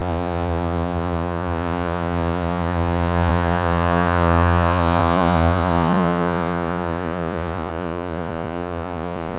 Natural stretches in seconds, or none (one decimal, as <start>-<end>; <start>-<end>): none